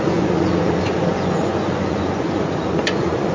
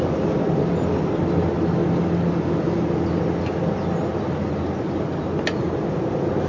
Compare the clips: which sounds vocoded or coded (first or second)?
first